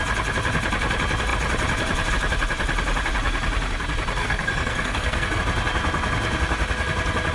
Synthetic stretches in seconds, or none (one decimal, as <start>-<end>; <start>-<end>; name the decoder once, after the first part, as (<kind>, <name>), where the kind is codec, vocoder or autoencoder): 4.2-5.4 (codec, SNAC)